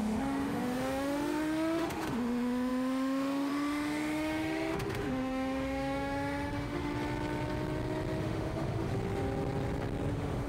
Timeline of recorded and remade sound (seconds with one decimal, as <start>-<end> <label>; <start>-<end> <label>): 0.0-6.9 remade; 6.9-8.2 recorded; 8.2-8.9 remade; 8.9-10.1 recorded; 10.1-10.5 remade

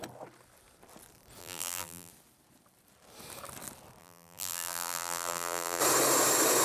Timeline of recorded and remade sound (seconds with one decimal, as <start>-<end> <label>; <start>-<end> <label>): 0.0-1.4 recorded; 1.4-2.1 remade; 2.1-4.0 recorded; 4.0-5.8 remade; 5.8-6.6 recorded

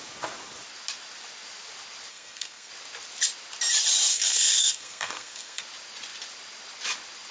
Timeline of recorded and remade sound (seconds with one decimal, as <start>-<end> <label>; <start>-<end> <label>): 0.0-2.1 recorded; 2.1-2.7 remade; 2.7-4.1 recorded; 4.1-5.6 remade; 5.6-7.3 recorded

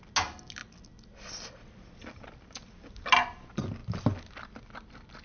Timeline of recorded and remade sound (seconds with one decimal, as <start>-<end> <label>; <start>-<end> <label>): 0.0-5.2 recorded

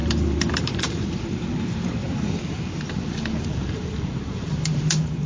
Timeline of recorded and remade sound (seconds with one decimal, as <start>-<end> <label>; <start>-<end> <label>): 0.0-5.3 remade